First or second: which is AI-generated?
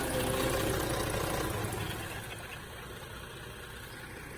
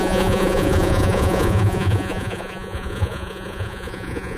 second